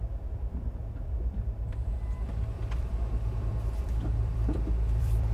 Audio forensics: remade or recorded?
remade